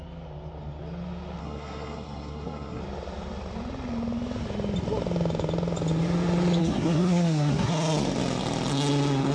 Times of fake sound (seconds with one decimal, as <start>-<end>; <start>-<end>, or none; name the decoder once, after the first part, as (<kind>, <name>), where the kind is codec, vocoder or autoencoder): 1.4-2.8 (codec, SNAC); 6.6-7.7